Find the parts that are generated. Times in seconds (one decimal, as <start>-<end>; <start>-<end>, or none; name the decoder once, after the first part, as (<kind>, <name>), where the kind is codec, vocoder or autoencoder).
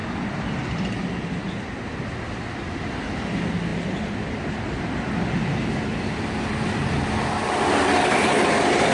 none